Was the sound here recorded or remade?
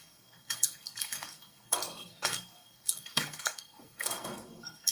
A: remade